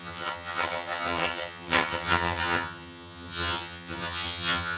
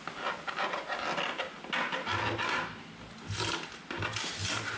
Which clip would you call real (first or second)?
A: second